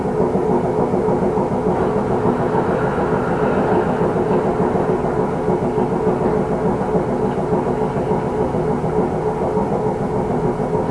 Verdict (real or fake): real